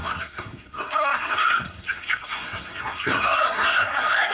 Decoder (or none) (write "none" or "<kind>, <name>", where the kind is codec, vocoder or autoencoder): codec, SNAC